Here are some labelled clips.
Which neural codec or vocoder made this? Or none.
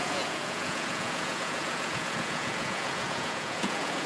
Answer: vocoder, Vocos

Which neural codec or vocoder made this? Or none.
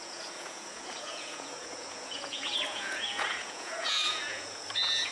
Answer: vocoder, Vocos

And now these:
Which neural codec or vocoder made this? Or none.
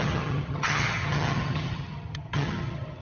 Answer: vocoder, HiFi-GAN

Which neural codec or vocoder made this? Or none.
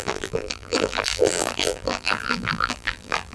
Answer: vocoder, BigVGAN v2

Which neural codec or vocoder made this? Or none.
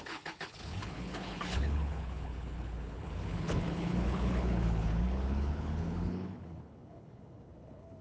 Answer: codec, HILCodec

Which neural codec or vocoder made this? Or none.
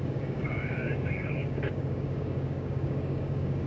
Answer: codec, DAC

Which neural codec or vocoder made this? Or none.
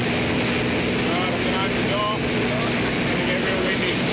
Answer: none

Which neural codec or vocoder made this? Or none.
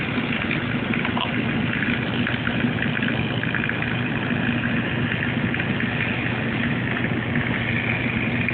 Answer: none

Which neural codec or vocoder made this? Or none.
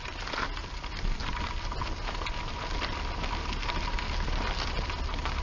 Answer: none